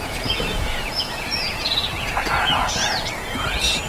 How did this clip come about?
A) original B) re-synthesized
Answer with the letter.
B